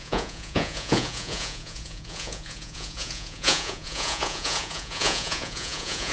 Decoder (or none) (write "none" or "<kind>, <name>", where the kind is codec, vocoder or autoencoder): vocoder, Vocos